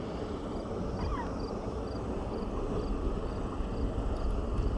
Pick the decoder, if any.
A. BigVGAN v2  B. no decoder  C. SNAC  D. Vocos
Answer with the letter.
B